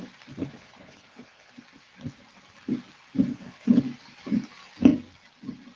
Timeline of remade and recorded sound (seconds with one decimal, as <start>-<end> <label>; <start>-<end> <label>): 0.0-0.4 recorded; 0.4-1.5 remade; 1.5-3.3 recorded; 3.3-3.8 remade; 3.8-5.8 recorded

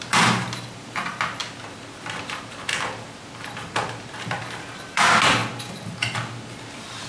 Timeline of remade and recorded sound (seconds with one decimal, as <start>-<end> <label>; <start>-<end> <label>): 0.0-1.4 remade; 1.4-4.2 recorded; 4.2-5.4 remade; 5.4-7.1 recorded

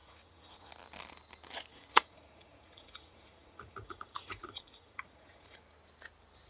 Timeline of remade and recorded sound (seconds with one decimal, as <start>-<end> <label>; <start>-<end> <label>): 0.0-0.7 remade; 0.7-1.7 recorded; 1.7-5.6 remade; 5.6-6.5 recorded

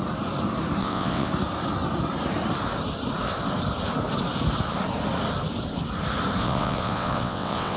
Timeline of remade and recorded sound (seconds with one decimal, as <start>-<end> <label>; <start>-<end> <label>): 0.0-0.8 recorded; 0.8-1.3 remade; 1.3-6.4 recorded; 6.4-7.8 remade